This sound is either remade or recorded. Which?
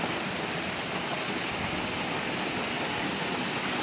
recorded